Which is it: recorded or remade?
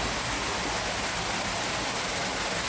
recorded